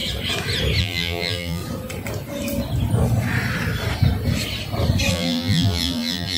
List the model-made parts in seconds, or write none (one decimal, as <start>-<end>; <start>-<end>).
0.8-1.6; 5.1-6.4